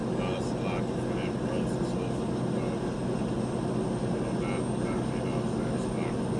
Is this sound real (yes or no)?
yes